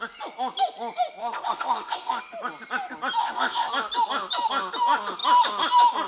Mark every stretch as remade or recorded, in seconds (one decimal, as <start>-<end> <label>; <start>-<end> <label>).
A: 0.0-1.2 recorded; 1.2-2.2 remade; 2.2-3.2 recorded; 3.2-3.7 remade; 3.7-6.1 recorded